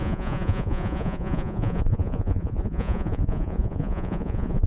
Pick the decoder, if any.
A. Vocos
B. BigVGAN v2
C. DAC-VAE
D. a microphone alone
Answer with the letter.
A